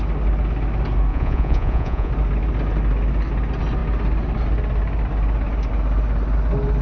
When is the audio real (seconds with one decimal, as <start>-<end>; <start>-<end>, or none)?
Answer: 0.0-1.1; 2.1-6.8